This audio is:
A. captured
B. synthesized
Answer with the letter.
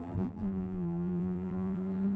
B